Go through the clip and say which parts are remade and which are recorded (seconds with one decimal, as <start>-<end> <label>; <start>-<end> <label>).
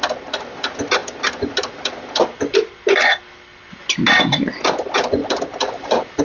0.0-5.2 recorded; 5.2-6.2 remade